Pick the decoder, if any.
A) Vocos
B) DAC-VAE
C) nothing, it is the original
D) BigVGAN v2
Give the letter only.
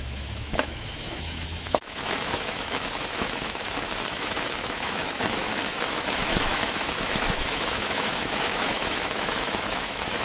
B